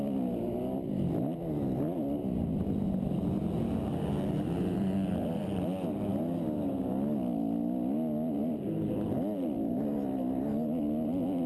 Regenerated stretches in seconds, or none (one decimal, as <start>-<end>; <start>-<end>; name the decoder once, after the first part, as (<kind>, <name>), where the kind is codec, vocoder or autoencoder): none